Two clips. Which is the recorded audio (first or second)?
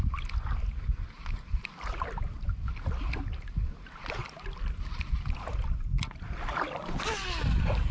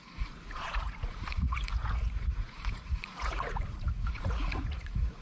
first